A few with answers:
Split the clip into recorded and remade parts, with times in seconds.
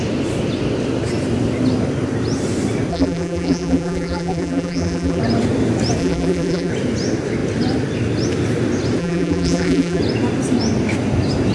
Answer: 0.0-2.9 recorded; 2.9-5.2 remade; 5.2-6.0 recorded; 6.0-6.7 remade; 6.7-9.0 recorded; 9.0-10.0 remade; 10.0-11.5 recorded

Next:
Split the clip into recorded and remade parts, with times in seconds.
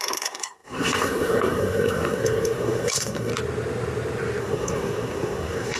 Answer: 0.0-3.3 remade; 3.3-4.4 recorded; 4.4-5.8 remade